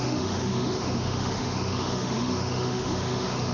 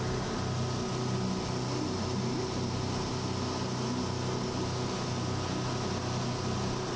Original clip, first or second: second